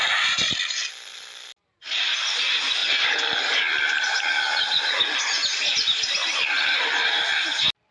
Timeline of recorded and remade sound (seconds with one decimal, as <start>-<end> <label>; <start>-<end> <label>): 0.0-7.9 recorded